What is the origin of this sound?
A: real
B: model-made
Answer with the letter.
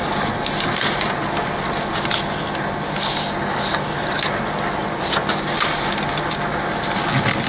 A